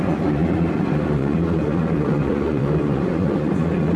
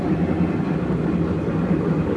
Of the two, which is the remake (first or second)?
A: first